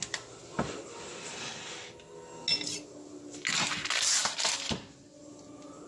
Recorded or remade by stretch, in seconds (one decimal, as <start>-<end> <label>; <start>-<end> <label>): 0.0-0.4 recorded; 0.4-1.7 remade; 1.7-4.2 recorded; 4.2-5.2 remade; 5.2-5.9 recorded